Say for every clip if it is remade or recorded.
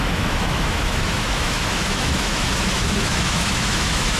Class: remade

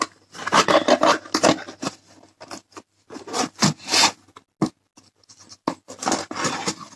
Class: recorded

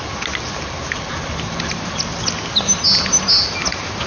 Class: recorded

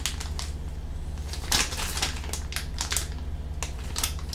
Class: recorded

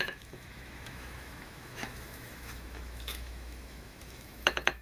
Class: remade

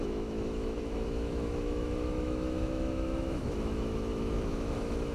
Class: remade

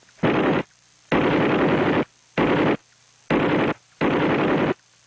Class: recorded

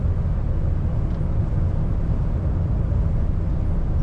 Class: recorded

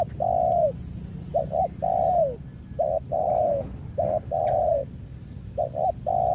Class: recorded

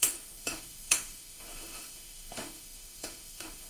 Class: remade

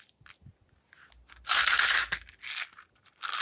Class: recorded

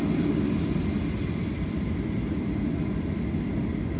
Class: recorded